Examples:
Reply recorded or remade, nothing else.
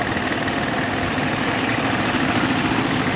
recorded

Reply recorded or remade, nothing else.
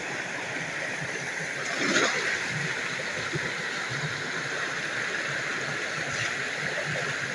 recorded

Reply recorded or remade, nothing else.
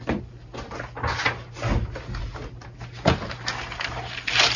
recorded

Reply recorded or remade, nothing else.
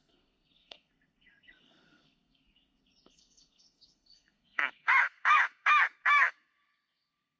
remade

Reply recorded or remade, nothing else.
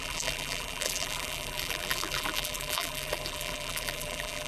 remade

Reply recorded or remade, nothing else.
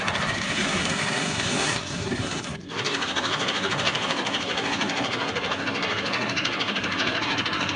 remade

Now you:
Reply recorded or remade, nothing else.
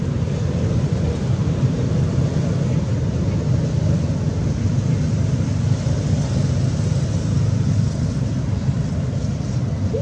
recorded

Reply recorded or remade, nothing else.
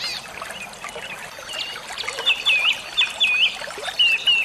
recorded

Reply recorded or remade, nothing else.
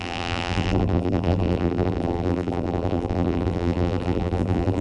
remade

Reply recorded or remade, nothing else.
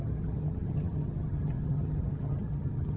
remade